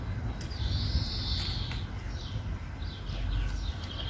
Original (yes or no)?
yes